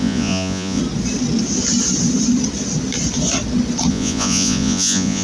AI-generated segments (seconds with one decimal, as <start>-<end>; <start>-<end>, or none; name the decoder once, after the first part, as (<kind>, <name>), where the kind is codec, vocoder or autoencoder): 0.0-0.8 (vocoder, Vocos); 3.9-5.2